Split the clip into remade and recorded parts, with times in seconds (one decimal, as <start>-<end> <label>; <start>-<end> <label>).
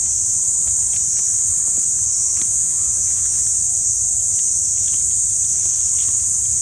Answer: 0.0-2.5 recorded; 2.5-3.4 remade; 3.4-6.6 recorded